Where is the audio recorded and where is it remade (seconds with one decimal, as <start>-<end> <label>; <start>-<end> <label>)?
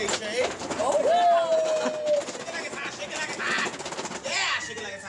0.0-5.1 recorded